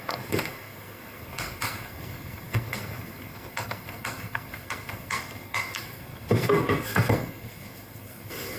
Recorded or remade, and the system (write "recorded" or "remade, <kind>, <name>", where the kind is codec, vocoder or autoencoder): remade, codec, SNAC